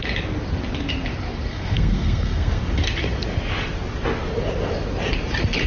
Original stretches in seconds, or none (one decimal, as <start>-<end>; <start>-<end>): 0.0-1.5; 2.6-5.7